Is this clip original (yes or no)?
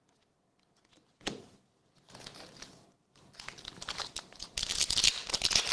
yes